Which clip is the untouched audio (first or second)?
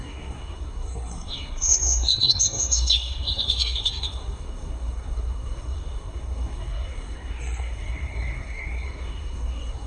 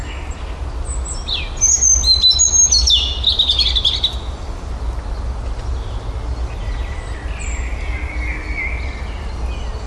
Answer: second